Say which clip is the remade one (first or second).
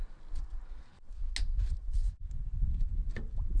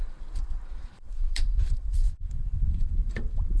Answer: second